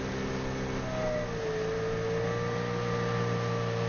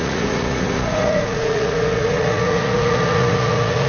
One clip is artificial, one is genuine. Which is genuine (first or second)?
first